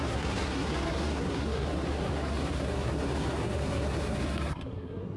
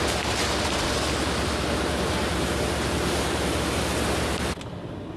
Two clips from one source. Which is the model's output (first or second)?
first